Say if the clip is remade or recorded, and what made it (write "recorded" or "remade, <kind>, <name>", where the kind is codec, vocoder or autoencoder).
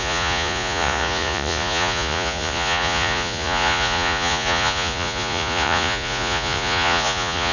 remade, vocoder, Vocos